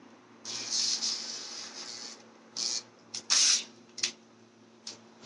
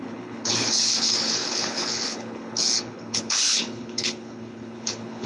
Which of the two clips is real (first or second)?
first